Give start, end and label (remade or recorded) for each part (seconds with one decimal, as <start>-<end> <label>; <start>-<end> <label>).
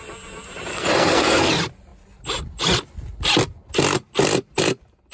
0.0-0.7 recorded; 0.7-1.5 remade; 1.5-5.1 recorded